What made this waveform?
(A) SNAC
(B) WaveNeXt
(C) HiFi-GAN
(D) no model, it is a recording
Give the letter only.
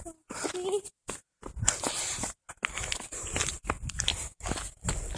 D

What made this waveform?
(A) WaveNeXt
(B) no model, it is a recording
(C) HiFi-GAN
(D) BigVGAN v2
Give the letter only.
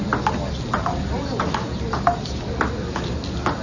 B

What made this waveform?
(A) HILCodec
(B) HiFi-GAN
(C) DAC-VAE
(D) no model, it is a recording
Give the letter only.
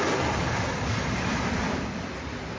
D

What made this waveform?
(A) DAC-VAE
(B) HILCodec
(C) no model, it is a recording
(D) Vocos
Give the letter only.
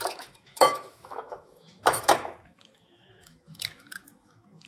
A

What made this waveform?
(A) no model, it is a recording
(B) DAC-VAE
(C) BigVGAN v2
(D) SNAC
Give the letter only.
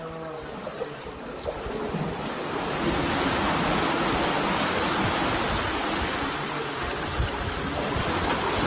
A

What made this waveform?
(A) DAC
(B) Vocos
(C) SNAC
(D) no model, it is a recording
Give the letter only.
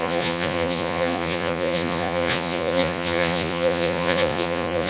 B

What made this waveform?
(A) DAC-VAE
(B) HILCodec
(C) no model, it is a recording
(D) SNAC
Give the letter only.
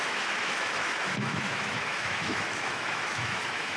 A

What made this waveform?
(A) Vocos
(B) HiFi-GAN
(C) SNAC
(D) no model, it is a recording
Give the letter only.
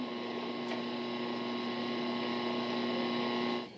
D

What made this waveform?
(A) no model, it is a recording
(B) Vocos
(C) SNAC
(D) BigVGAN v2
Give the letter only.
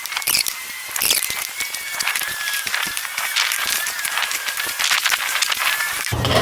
D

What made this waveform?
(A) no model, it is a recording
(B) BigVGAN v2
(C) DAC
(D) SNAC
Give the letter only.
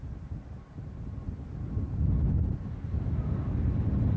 A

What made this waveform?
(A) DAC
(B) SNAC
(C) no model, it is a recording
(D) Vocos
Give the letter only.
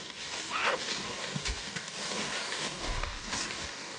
A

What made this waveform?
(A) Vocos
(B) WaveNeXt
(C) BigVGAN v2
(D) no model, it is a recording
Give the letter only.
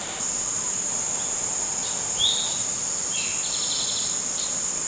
D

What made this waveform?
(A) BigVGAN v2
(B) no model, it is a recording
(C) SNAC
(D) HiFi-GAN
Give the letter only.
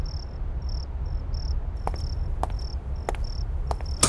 B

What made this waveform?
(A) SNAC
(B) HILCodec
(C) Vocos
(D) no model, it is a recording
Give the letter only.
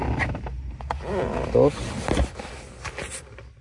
D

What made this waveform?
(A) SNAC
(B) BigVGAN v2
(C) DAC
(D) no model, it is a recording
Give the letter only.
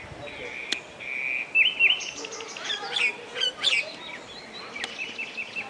D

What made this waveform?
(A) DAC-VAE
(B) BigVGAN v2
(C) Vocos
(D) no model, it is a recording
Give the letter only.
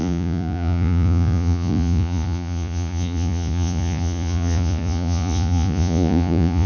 C